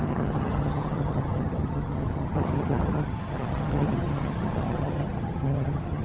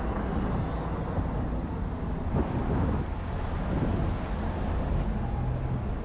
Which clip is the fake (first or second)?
first